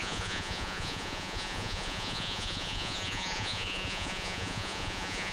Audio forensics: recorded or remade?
remade